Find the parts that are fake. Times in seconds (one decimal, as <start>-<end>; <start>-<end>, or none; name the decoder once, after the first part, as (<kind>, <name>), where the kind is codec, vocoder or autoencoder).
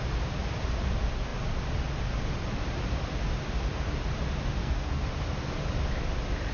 4.6-5.1 (codec, SNAC)